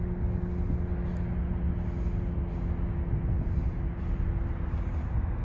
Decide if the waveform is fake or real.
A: real